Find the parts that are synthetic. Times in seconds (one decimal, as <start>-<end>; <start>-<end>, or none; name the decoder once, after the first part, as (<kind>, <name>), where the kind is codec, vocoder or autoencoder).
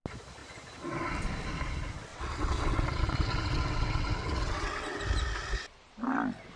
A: 2.1-5.0 (vocoder, WaveNeXt)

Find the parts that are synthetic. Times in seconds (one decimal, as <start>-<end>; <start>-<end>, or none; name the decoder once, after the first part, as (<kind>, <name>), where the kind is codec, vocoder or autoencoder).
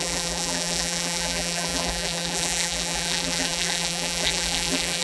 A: 0.0-5.0 (vocoder, BigVGAN v2)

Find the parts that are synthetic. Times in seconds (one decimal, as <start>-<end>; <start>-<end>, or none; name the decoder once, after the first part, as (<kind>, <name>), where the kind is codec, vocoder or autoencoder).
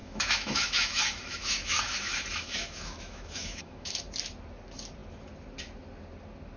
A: 0.0-4.0 (autoencoder, DAC-VAE)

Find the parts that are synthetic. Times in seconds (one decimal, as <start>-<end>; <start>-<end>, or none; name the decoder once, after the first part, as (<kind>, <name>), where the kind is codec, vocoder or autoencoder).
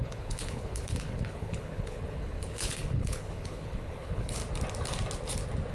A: 0.0-4.4 (codec, HILCodec)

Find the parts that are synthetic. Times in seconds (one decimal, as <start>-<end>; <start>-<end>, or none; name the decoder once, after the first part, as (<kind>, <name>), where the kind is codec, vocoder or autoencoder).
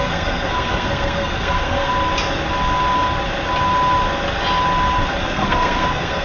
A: 0.0-1.9 (codec, SNAC); 5.2-6.2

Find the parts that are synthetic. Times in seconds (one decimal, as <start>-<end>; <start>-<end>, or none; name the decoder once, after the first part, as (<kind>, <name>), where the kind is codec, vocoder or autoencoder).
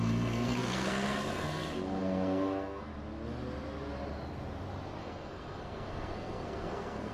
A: 0.0-2.9 (codec, SNAC); 5.0-7.1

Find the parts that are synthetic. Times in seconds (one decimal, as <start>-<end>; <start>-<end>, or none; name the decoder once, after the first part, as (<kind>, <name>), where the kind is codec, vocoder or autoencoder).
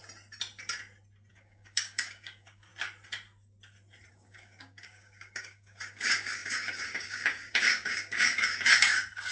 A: 1.3-2.7 (codec, DAC); 4.1-9.3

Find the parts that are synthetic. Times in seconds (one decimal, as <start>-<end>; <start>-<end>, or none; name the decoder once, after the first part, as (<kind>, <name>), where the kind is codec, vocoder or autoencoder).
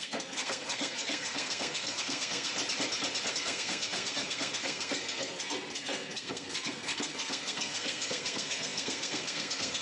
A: 0.0-2.5 (codec, SNAC); 3.3-9.8